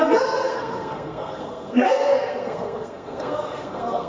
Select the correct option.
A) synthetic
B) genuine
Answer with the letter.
A